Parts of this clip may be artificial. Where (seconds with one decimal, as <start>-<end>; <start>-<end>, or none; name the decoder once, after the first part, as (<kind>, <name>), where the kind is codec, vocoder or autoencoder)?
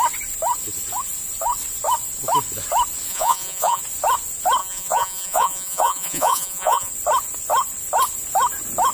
3.1-3.8 (vocoder, Vocos); 4.6-6.9